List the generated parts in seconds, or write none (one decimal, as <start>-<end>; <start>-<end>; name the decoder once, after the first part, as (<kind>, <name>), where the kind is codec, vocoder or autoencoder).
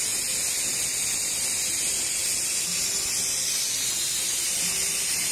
none